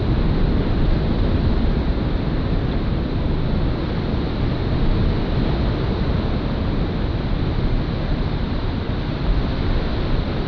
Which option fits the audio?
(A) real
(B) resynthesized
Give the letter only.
A